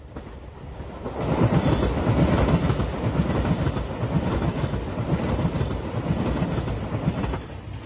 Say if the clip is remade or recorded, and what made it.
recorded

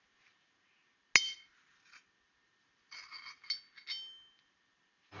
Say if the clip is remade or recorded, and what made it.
recorded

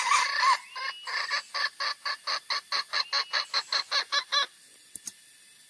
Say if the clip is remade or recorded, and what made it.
recorded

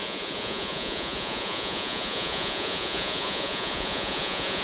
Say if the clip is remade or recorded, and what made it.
remade, vocoder, Vocos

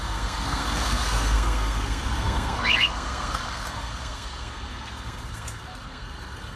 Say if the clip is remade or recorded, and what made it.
remade, codec, SNAC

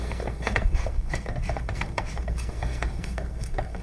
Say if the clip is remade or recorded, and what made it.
remade, codec, SNAC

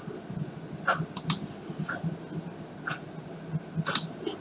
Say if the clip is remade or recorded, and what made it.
recorded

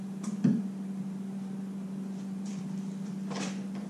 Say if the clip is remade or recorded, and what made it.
remade, vocoder, BigVGAN v2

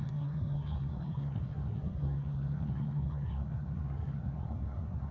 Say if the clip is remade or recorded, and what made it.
remade, codec, SNAC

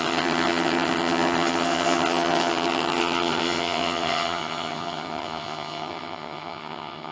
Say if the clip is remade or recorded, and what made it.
remade, vocoder, HiFi-GAN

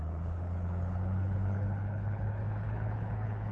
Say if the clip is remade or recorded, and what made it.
remade, codec, HILCodec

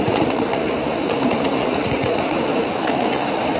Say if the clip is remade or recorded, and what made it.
remade, vocoder, Vocos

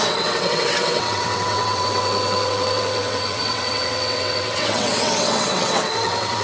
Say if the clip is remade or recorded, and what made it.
remade, vocoder, WaveNeXt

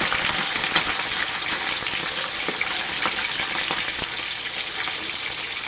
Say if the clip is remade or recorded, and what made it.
recorded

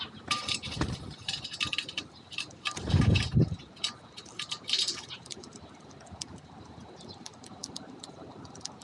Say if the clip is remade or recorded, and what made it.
remade, vocoder, BigVGAN v2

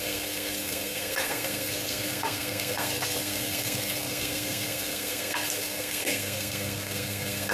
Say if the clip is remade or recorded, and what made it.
remade, codec, SNAC